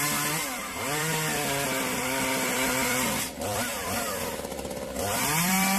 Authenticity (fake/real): fake